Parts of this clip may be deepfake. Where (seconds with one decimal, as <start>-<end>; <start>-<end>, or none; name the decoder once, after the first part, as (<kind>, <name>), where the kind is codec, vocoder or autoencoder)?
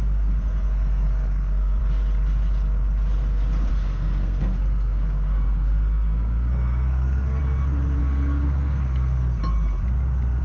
0.0-1.8 (codec, SNAC); 3.7-7.4; 8.0-9.4